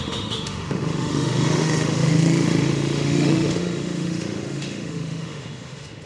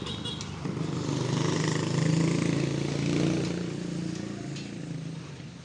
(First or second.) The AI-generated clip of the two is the first